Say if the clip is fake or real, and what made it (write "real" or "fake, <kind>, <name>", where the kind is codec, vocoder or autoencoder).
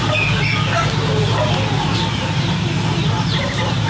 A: real